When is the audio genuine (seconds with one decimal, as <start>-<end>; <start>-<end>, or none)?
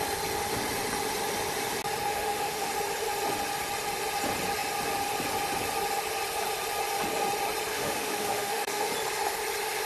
0.0-2.1; 2.7-7.7; 8.9-9.9